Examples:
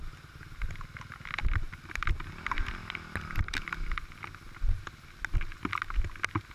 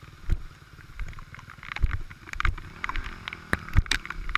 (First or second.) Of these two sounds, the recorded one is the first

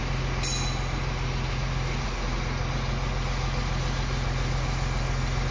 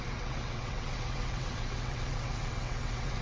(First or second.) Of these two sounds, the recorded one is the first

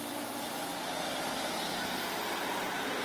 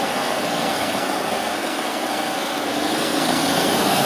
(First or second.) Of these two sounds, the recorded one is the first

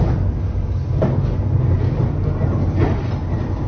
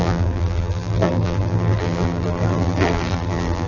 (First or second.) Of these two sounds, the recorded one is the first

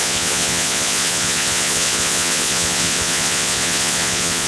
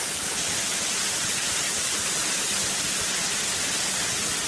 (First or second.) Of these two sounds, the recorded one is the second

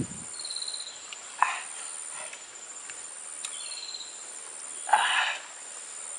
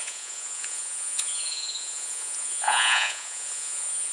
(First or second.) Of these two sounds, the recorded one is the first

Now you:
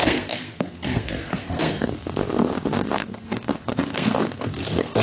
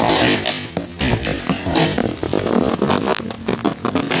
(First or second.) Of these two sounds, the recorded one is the second